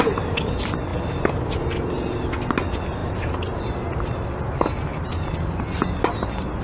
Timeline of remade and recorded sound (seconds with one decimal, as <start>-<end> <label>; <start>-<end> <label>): 0.0-0.9 recorded; 0.9-1.6 remade; 1.6-3.0 recorded; 3.0-4.4 remade; 4.4-6.6 recorded